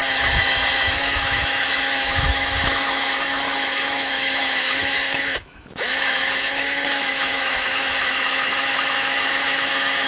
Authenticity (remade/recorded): remade